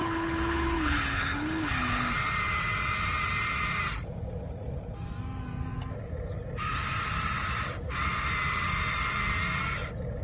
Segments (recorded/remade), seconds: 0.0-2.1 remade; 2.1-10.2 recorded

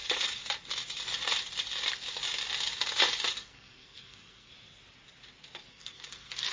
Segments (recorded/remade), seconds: 0.0-3.3 recorded; 3.3-4.5 remade; 4.5-5.7 recorded; 5.7-6.5 remade

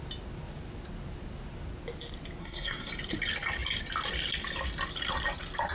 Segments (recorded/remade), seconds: 0.0-2.4 recorded; 2.4-2.9 remade; 2.9-5.7 recorded

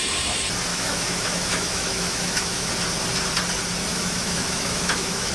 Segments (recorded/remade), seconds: 0.0-0.7 recorded; 0.7-2.7 remade; 2.7-3.9 recorded; 3.9-5.3 remade

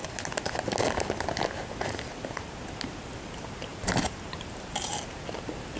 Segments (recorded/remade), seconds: 0.0-3.7 recorded; 3.7-4.9 remade; 4.9-5.8 recorded

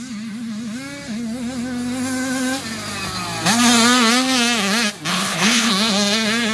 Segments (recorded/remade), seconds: 0.0-5.1 recorded; 5.1-5.7 remade; 5.7-6.5 recorded